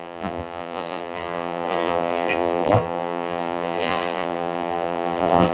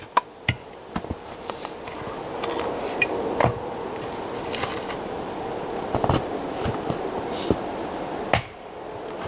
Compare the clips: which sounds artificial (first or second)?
first